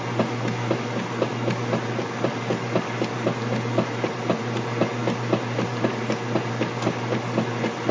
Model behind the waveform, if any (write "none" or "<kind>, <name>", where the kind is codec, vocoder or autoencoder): none